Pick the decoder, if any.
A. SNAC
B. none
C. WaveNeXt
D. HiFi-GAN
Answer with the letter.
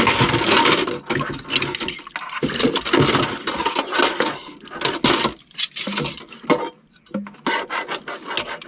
B